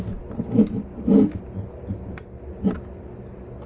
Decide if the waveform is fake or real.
real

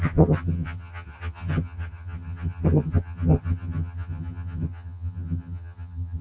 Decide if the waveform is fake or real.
fake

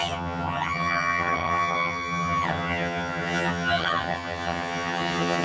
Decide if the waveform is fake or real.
fake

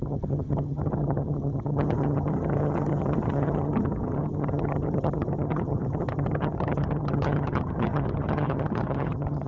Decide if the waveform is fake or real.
fake